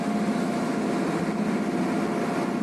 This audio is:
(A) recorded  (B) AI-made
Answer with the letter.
A